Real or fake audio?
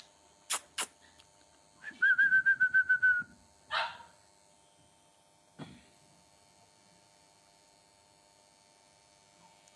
real